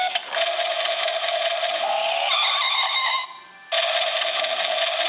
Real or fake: real